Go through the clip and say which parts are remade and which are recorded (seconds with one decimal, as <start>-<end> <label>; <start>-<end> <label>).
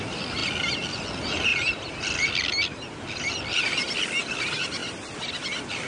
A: 0.0-5.9 recorded